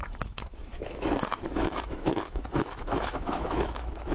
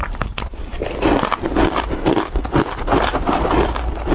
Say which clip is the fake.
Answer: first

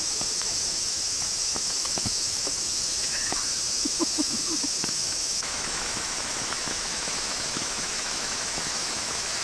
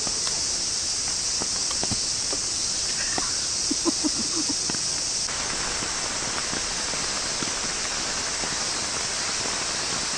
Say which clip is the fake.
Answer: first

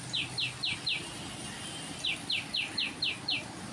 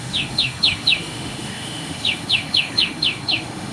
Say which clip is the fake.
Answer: second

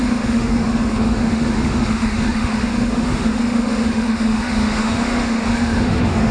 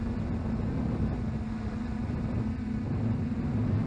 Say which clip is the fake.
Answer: first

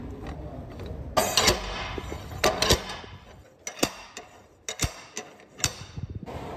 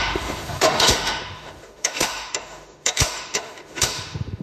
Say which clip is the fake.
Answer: second